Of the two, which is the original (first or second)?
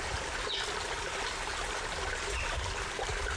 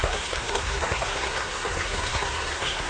first